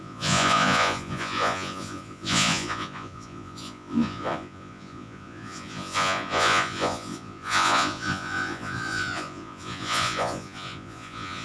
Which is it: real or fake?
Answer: fake